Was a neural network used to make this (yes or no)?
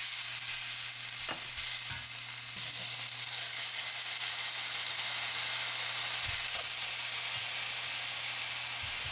no